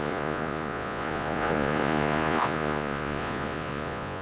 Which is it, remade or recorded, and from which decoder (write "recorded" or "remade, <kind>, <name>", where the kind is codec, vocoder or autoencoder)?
remade, vocoder, Vocos